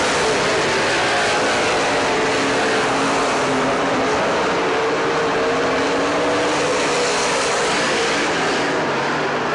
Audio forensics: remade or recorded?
recorded